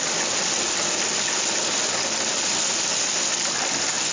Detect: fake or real real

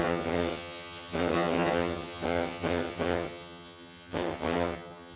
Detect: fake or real fake